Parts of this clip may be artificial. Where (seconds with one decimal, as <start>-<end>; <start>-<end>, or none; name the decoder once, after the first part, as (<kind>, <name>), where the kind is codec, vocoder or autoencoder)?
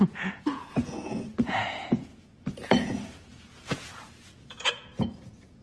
0.0-5.6 (vocoder, Vocos)